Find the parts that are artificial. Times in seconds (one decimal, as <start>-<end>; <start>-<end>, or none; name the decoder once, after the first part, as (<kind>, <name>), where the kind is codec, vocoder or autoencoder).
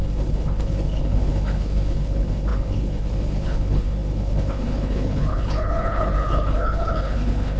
0.0-7.6 (codec, HILCodec)